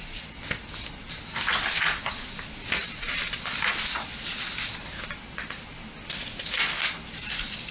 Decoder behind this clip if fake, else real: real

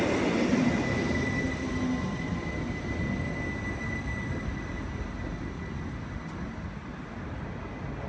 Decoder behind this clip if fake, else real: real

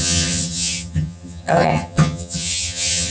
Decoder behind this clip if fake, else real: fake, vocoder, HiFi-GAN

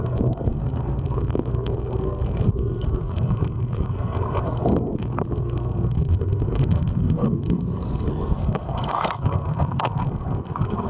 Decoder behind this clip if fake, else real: fake, codec, SNAC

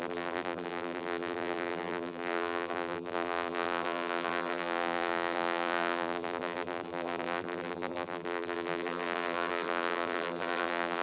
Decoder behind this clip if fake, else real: fake, vocoder, BigVGAN v2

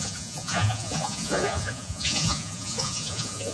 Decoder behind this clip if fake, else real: fake, vocoder, Vocos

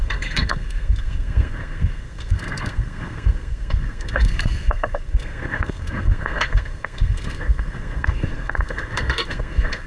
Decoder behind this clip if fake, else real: fake, codec, SNAC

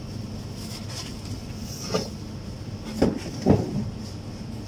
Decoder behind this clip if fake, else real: real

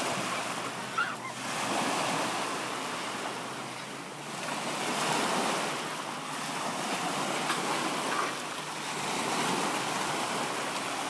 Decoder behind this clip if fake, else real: real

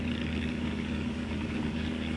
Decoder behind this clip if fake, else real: fake, codec, DAC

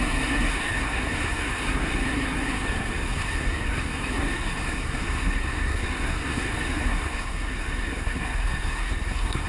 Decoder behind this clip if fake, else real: fake, codec, SNAC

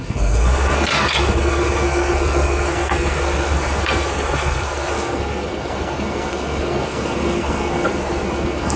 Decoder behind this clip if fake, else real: fake, codec, SNAC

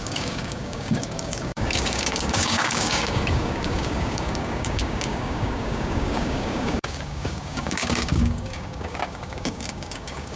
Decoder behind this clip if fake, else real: fake, codec, DAC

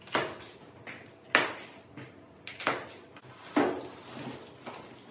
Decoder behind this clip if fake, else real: real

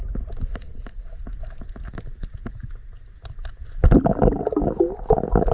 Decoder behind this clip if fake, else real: real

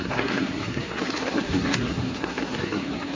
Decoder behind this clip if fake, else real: fake, codec, SNAC